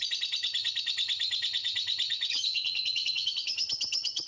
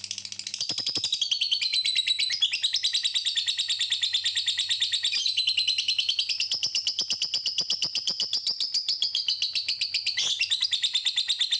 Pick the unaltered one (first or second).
second